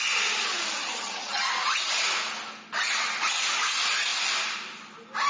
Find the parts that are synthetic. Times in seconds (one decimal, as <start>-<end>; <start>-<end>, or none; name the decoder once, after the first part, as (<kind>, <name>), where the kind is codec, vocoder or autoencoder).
0.8-1.4 (vocoder, HiFi-GAN)